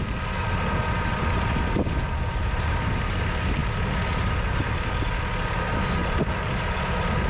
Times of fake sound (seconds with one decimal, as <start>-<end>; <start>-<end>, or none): 6.0-6.6